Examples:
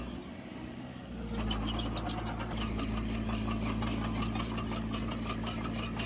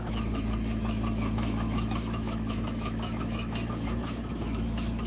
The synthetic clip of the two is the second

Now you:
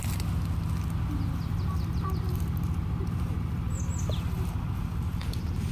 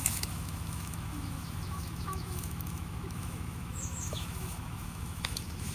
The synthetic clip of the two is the second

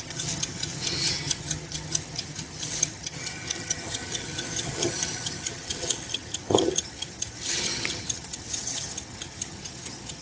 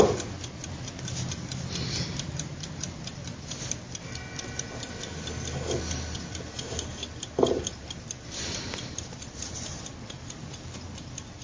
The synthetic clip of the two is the first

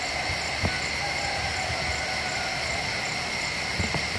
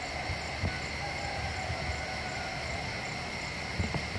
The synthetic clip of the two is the first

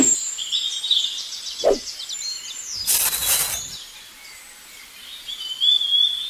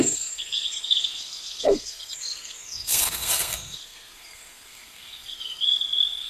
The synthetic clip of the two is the second